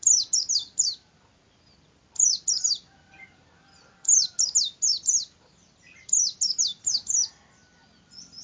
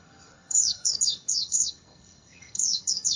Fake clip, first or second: second